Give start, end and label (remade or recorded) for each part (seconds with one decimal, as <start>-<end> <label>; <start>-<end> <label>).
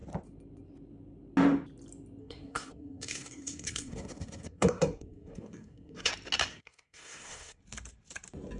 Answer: 0.0-2.2 recorded; 2.2-6.1 remade; 6.1-6.5 recorded; 6.5-7.6 remade; 7.6-8.6 recorded